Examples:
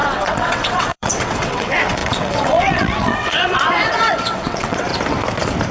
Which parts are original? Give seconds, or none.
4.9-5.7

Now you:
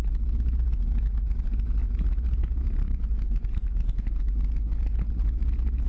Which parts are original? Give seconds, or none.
0.0-5.9

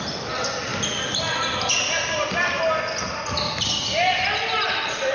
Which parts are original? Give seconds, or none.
0.0-5.1

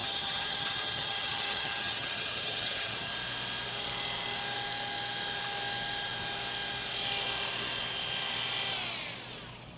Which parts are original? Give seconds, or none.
3.1-9.8

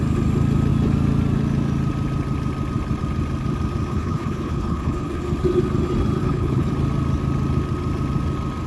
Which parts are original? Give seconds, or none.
0.0-3.9; 5.2-6.2; 6.7-8.7

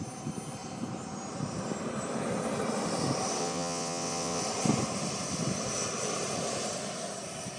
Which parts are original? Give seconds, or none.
0.0-3.4; 4.4-7.6